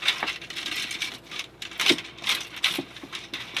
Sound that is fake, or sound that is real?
real